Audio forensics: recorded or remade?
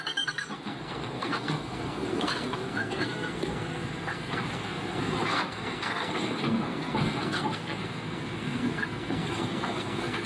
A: remade